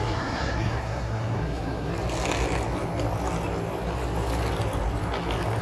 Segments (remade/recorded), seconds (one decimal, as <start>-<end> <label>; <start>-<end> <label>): 0.0-1.9 remade; 1.9-5.6 recorded